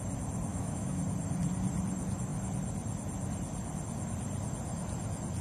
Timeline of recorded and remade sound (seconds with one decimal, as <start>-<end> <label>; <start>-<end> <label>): 0.0-0.5 recorded; 0.5-1.0 remade; 1.0-5.4 recorded